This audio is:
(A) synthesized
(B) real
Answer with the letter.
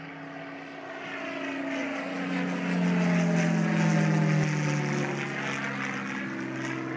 B